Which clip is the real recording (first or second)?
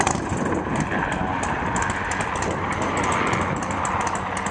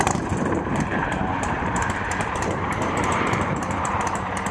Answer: first